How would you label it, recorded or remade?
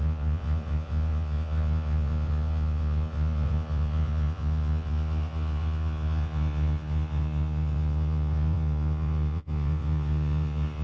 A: remade